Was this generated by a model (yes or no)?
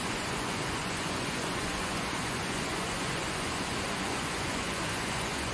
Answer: yes